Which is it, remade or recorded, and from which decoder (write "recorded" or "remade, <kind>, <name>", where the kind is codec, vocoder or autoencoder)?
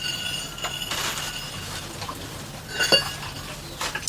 recorded